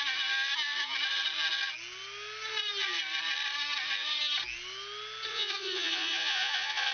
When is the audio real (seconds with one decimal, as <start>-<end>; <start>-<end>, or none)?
0.0-5.3